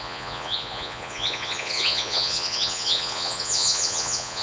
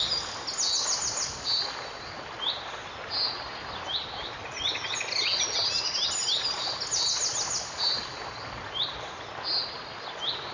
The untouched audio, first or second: second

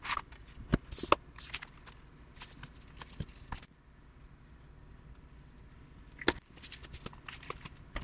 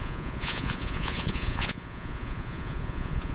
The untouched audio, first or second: first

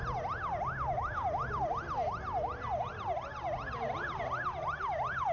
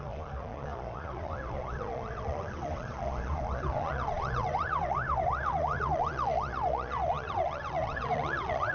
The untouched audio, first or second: first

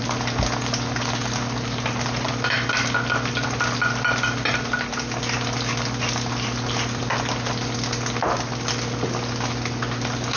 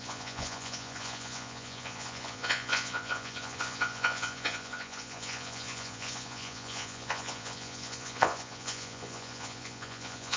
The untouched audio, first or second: first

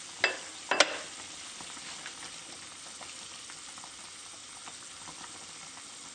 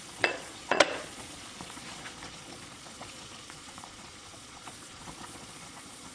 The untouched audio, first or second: first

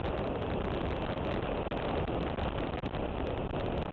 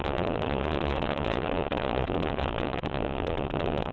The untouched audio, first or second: first